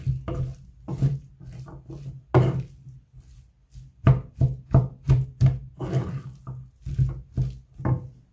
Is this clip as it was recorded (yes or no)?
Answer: yes